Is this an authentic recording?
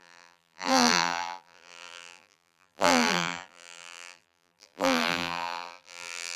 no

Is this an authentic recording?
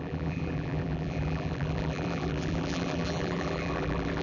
no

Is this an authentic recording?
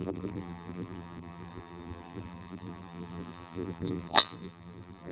no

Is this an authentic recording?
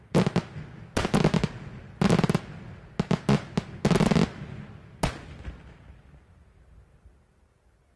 yes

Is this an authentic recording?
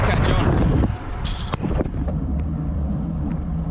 no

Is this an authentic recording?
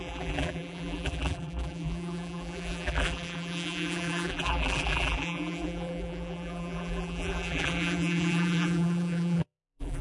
no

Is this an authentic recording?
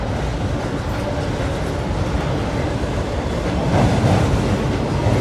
yes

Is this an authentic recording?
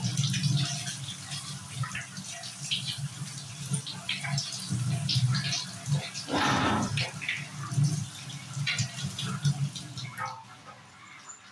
yes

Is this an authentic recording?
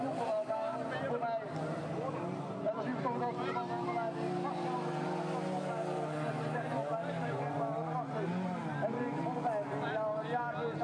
yes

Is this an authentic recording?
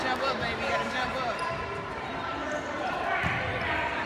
yes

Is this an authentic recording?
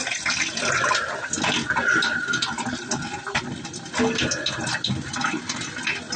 yes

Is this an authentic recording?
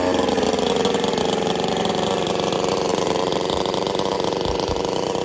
no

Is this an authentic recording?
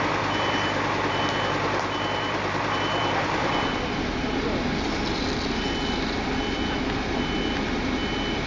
no